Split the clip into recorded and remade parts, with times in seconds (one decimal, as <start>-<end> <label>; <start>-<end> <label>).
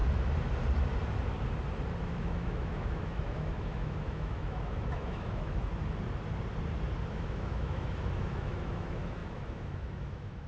0.0-2.0 recorded; 2.0-5.7 remade; 5.7-7.1 recorded; 7.1-10.5 remade